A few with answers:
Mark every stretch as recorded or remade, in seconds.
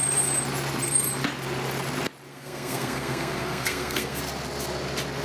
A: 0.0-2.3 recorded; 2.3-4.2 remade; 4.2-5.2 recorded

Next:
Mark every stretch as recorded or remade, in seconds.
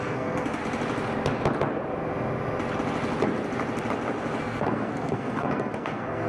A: 0.0-0.6 remade; 0.6-4.4 recorded; 4.4-6.3 remade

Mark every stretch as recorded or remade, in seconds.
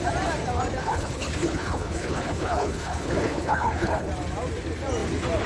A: 0.0-0.8 recorded; 0.8-4.1 remade; 4.1-5.5 recorded